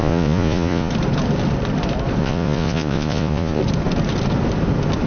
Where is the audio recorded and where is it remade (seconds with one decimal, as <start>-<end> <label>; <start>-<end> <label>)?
0.0-0.9 remade; 0.9-2.2 recorded; 2.2-3.6 remade; 3.6-5.1 recorded